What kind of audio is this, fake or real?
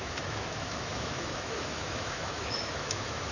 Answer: fake